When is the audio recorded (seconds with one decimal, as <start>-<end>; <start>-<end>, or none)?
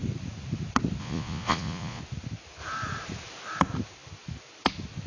0.0-1.0; 2.0-5.1